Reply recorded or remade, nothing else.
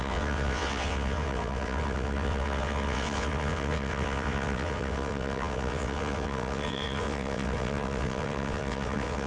remade